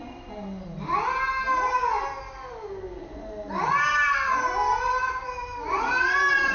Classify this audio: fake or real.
real